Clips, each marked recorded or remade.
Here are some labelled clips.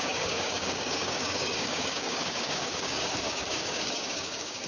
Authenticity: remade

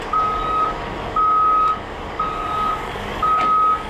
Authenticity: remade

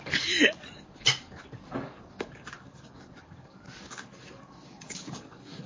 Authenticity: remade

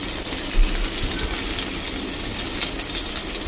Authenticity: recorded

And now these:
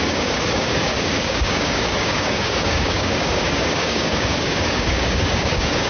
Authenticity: remade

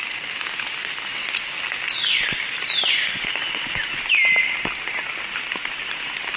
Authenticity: recorded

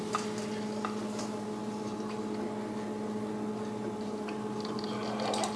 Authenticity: recorded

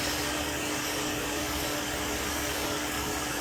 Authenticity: remade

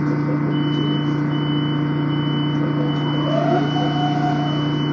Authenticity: recorded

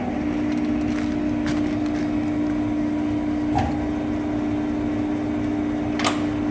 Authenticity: recorded